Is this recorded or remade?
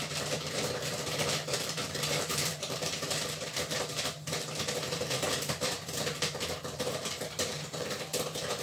remade